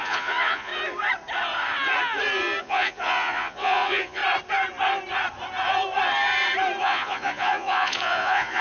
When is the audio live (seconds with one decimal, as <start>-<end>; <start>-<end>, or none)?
0.7-2.6; 4.2-6.8